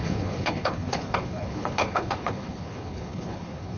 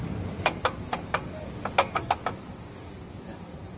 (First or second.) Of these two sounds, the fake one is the first